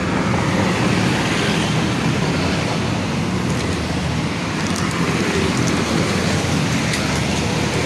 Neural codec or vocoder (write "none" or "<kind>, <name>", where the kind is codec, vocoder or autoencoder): none